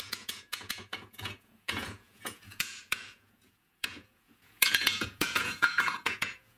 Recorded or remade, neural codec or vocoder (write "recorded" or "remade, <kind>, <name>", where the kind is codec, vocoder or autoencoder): remade, vocoder, Vocos